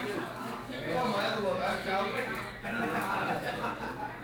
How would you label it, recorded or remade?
remade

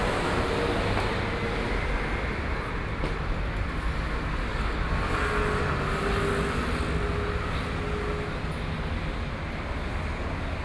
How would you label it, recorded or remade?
recorded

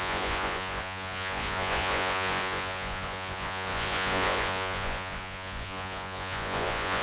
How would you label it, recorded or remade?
remade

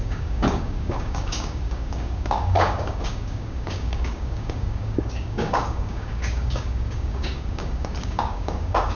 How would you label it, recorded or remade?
remade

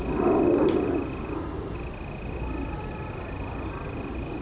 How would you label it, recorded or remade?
recorded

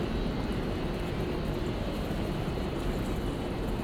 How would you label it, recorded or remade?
recorded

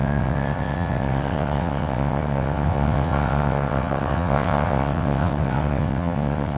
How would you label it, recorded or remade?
remade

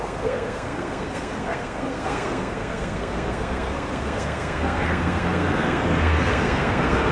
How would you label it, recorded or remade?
remade